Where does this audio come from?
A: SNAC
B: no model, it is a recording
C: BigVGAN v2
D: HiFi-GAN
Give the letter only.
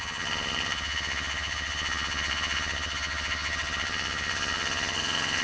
D